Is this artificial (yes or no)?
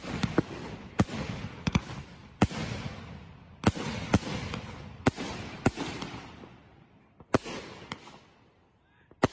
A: no